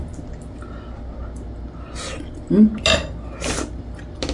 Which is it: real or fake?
real